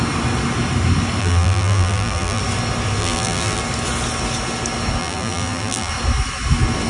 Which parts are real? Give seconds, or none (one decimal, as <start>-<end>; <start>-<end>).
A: 0.0-1.2; 2.4-3.0; 3.6-5.0; 5.9-6.9